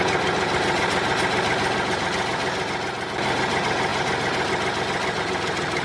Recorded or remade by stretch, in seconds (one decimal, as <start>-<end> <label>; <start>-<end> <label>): 0.0-5.8 recorded